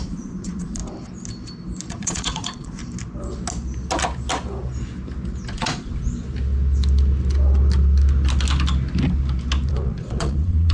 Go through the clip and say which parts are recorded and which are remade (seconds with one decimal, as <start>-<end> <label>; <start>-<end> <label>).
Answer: 0.0-0.8 remade; 0.8-1.9 recorded; 1.9-2.8 remade; 2.8-5.5 recorded; 5.5-5.9 remade; 5.9-9.7 recorded; 9.7-10.7 remade